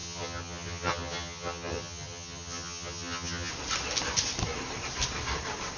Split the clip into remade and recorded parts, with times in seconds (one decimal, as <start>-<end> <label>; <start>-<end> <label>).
0.0-3.5 remade; 3.5-5.8 recorded

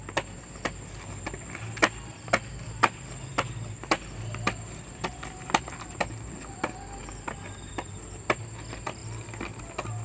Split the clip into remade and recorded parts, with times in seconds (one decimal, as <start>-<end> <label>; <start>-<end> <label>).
0.0-3.3 recorded; 3.3-4.8 remade; 4.8-9.0 recorded; 9.0-9.6 remade; 9.6-10.0 recorded

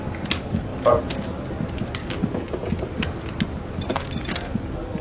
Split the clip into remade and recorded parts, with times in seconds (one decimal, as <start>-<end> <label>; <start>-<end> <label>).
0.0-5.0 recorded

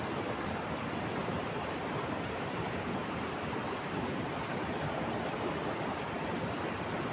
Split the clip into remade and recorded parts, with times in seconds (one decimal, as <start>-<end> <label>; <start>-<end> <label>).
0.0-1.2 recorded; 1.2-4.3 remade; 4.3-7.1 recorded

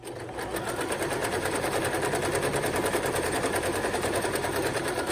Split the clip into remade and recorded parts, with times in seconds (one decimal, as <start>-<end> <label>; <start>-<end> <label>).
0.0-1.2 recorded; 1.2-1.8 remade; 1.8-2.5 recorded; 2.5-5.1 remade

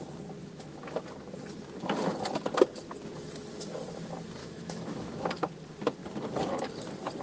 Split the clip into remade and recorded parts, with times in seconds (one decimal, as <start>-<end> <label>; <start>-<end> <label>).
0.0-0.4 recorded; 0.4-1.0 remade; 1.0-4.4 recorded; 4.4-5.3 remade; 5.3-7.2 recorded

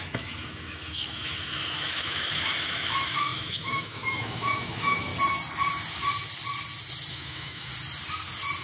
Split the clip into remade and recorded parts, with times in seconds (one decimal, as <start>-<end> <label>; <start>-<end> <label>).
0.0-5.1 remade; 5.1-7.1 recorded; 7.1-7.7 remade; 7.7-8.6 recorded